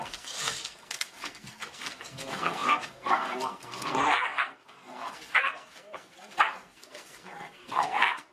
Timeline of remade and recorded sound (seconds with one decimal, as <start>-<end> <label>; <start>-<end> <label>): 0.0-8.3 remade